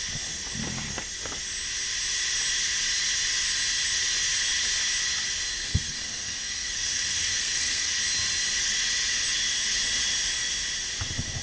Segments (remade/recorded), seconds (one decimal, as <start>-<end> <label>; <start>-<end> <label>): 0.0-5.6 recorded; 5.6-7.9 remade; 7.9-11.4 recorded